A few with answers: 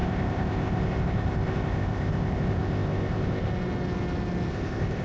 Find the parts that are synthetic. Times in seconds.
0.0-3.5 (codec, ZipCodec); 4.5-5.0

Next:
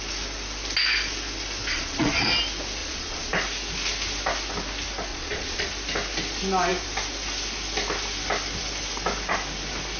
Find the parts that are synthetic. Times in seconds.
1.7-2.3 (vocoder, Vocos); 2.8-3.3; 5.1-5.7

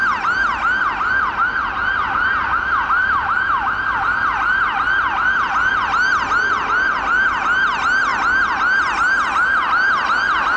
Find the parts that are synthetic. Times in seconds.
3.0-3.7 (vocoder, BigVGAN v2)

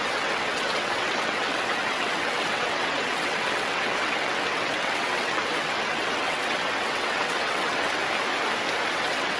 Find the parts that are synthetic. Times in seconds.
0.0-8.0 (vocoder, WaveNeXt); 8.9-9.4

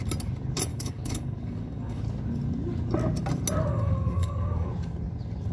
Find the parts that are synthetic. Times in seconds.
0.7-2.0 (codec, DAC); 3.7-4.7

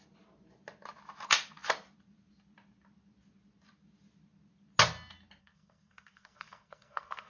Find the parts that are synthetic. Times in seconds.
5.4-7.3 (codec, SNAC)